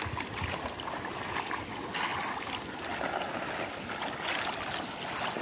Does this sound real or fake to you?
real